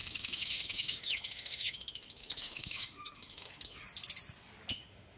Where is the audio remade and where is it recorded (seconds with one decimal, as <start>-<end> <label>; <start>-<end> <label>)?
0.0-3.8 remade; 3.8-4.7 recorded; 4.7-5.2 remade